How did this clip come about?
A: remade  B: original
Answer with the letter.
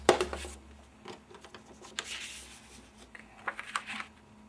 B